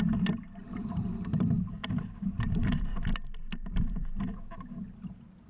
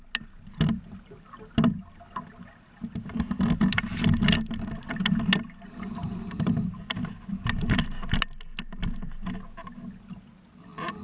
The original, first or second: second